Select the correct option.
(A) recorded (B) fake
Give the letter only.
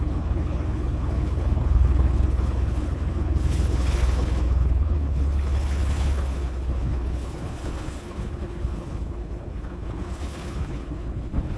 B